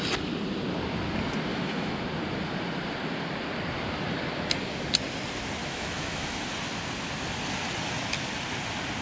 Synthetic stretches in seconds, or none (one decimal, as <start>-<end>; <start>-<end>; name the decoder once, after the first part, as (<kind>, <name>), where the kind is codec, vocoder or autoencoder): 1.5-2.0 (autoencoder, DAC-VAE); 5.6-6.4